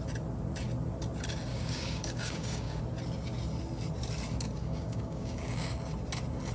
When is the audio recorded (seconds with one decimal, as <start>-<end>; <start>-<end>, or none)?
0.0-1.5; 2.8-4.6; 5.7-6.5